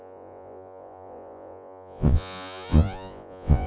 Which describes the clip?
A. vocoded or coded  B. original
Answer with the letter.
A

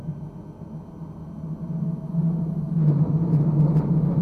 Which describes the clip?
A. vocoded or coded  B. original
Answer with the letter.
B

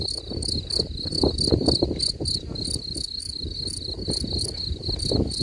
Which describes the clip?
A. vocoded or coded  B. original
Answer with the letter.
B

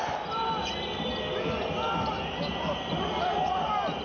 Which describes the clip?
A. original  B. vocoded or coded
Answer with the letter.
A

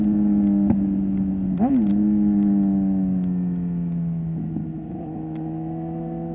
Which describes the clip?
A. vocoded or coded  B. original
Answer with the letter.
B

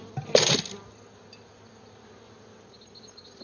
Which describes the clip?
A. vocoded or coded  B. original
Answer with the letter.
B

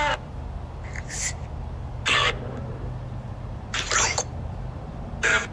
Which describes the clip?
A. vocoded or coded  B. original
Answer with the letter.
B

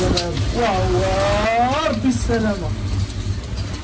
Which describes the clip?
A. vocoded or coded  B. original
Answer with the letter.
B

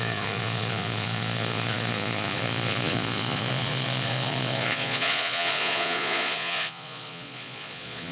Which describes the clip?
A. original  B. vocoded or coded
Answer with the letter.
B